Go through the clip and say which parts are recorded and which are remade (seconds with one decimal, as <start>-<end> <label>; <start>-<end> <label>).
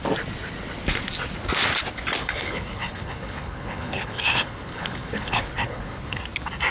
0.0-2.2 recorded; 2.2-6.2 remade; 6.2-6.7 recorded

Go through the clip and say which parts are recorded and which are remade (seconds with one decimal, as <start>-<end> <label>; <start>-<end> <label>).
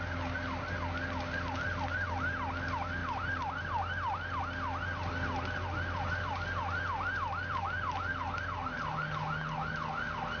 0.0-10.4 recorded